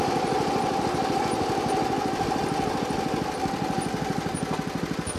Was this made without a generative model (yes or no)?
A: yes